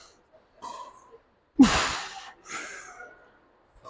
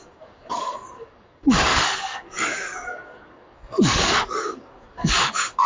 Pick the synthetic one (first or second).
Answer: second